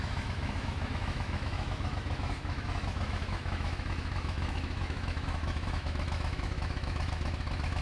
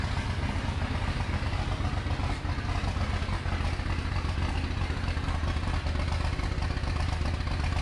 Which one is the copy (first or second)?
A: first